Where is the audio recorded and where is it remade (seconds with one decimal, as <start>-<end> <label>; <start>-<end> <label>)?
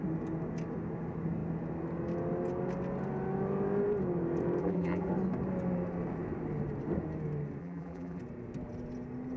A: 0.0-4.6 recorded; 4.6-5.1 remade; 5.1-7.6 recorded; 7.6-8.2 remade; 8.2-9.4 recorded